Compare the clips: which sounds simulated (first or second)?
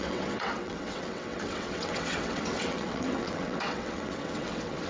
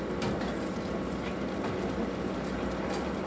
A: first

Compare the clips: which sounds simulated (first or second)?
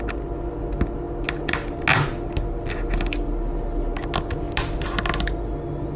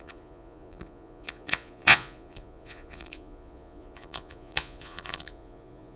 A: second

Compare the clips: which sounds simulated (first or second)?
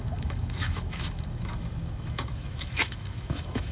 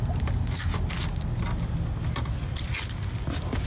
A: first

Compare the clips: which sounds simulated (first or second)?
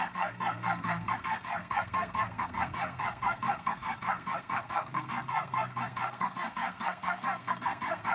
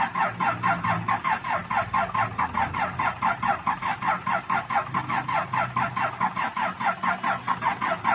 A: first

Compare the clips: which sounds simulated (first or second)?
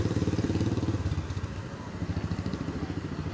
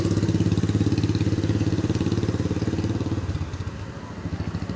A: first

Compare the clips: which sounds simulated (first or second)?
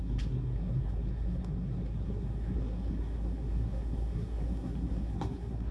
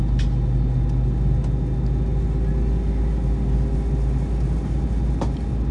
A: first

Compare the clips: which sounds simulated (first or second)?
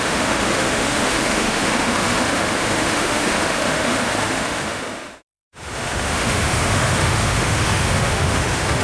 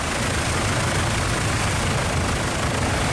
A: first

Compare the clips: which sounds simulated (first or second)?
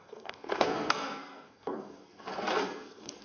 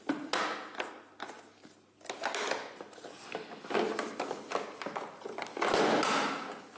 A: first